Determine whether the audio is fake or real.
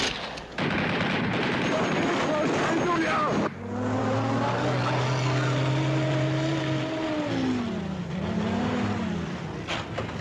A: real